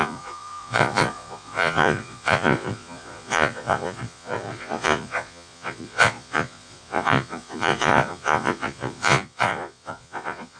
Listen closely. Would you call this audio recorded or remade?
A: remade